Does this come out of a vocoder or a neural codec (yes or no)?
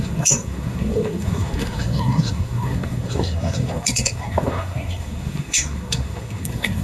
yes